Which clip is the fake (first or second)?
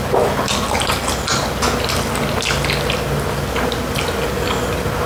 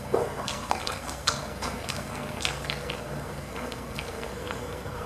second